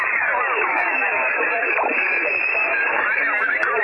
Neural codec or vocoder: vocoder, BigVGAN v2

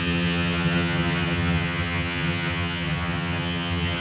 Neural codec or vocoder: vocoder, HiFi-GAN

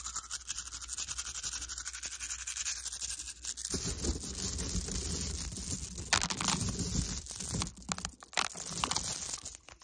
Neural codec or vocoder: none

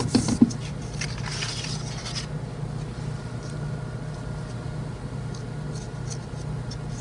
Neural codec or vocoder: none